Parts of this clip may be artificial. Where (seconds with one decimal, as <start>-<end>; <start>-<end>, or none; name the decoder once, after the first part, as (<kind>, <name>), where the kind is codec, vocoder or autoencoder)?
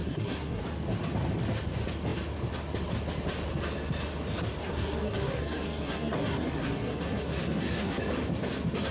0.0-0.6 (codec, SNAC); 4.6-8.0